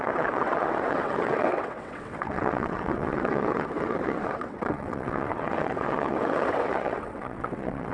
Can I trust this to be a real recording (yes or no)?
no